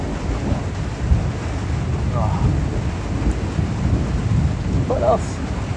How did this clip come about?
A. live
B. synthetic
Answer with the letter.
A